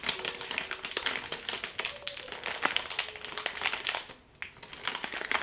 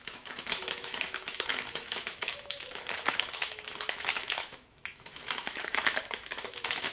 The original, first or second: first